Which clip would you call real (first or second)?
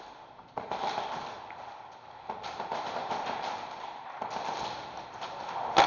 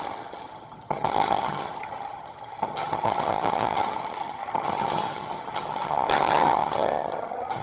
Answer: first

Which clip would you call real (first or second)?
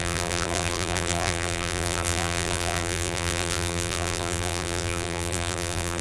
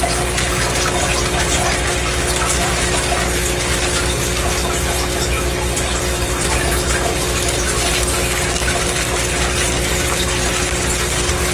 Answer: second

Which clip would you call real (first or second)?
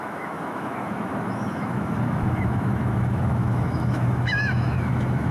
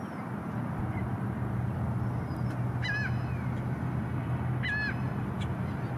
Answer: second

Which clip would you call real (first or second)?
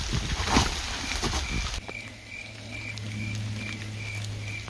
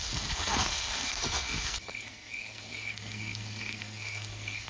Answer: first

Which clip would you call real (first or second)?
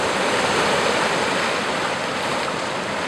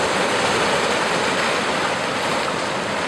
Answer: second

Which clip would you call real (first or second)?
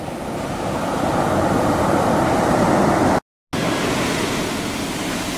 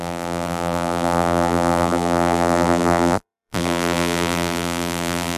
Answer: first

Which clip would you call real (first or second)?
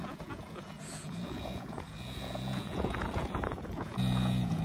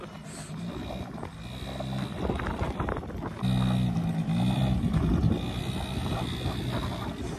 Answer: second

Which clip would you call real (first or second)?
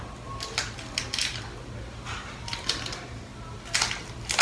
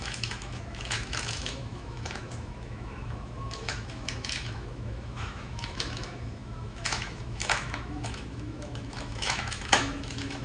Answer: first